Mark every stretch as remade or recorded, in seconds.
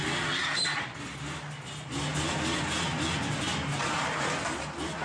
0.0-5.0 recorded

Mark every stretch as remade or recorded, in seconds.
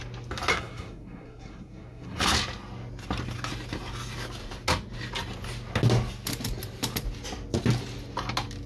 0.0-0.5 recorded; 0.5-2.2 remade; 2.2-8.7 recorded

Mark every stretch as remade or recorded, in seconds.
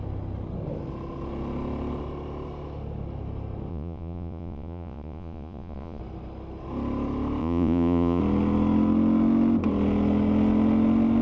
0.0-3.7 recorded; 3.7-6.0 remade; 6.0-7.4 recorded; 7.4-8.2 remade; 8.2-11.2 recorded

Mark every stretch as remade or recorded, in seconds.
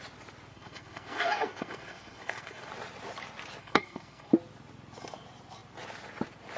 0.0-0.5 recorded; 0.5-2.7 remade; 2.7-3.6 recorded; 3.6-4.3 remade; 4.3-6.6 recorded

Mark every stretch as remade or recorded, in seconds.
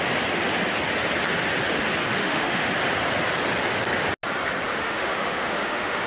0.0-2.2 recorded; 2.2-2.7 remade; 2.7-4.7 recorded; 4.7-6.1 remade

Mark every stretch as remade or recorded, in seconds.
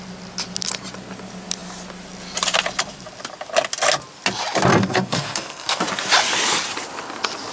0.0-4.7 recorded; 4.7-5.8 remade; 5.8-7.5 recorded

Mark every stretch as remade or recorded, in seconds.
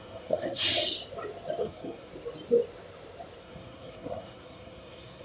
0.0-0.6 remade; 0.6-1.6 recorded; 1.6-2.1 remade; 2.1-3.4 recorded; 3.4-5.2 remade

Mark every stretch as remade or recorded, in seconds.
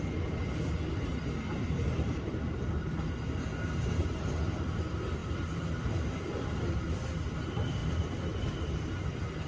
0.0-1.1 recorded; 1.1-2.3 remade; 2.3-5.2 recorded; 5.2-6.8 remade; 6.8-7.8 recorded; 7.8-8.6 remade; 8.6-9.5 recorded